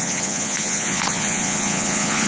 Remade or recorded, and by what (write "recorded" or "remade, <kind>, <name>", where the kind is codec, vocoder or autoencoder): remade, vocoder, Vocos